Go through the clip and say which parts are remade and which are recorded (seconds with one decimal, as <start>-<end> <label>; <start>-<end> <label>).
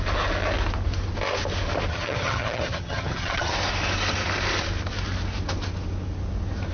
0.0-1.9 recorded; 1.9-3.5 remade; 3.5-6.7 recorded